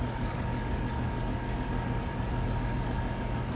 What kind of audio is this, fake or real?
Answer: fake